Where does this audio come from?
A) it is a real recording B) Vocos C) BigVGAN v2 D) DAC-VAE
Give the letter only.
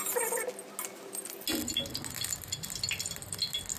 A